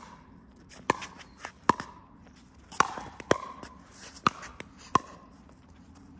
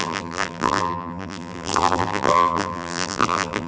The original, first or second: first